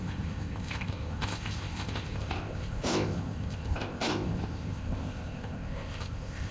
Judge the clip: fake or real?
fake